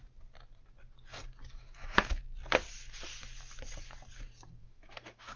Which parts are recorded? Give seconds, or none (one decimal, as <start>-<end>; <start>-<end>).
0.0-1.6; 2.2-4.6